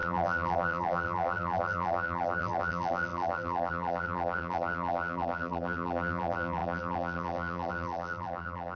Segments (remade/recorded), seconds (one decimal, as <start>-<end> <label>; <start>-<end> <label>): 0.0-8.7 remade